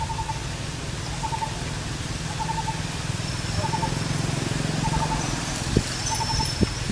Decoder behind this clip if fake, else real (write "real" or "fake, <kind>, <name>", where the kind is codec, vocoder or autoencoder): real